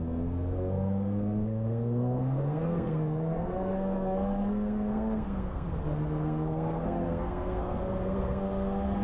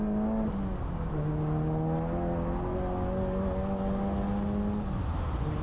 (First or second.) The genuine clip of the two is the second